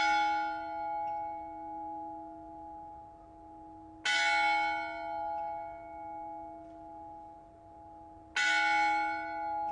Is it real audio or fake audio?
real